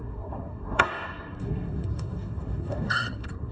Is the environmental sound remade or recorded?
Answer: remade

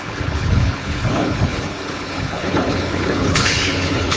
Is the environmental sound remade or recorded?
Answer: remade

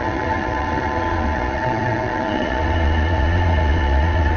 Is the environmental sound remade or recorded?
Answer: remade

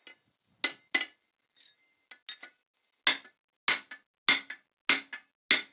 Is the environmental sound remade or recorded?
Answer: recorded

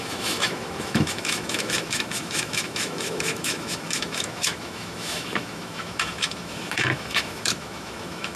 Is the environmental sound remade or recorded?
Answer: remade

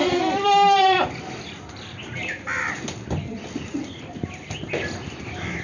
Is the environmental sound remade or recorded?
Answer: recorded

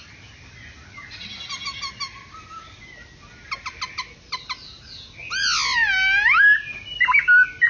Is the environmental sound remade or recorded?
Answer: recorded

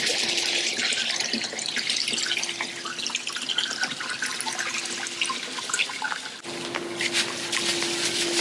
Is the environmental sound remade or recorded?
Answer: recorded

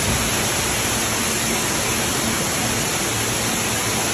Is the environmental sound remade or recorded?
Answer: recorded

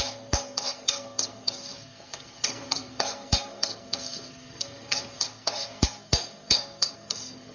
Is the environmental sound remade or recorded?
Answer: remade